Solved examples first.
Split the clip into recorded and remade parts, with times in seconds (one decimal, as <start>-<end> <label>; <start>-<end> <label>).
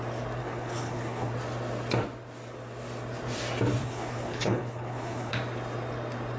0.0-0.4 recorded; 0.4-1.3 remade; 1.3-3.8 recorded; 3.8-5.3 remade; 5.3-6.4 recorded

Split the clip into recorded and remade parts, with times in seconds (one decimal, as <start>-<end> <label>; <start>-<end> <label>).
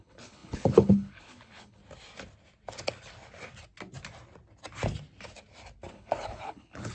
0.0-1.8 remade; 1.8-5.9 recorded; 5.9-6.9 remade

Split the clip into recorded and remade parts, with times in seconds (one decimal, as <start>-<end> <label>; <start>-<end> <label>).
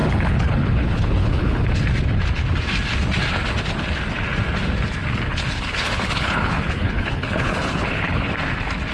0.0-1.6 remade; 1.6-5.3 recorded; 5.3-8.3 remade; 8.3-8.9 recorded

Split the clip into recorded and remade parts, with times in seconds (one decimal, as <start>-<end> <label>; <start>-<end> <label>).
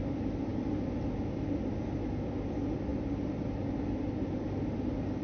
0.0-5.2 recorded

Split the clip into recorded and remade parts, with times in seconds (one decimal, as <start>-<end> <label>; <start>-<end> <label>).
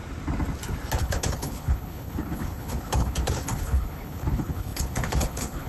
0.0-1.0 recorded; 1.0-5.7 remade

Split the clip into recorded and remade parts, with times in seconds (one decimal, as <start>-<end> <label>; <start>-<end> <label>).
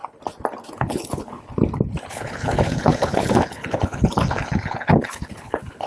0.0-0.7 recorded; 0.7-1.5 remade; 1.5-2.1 recorded; 2.1-5.9 remade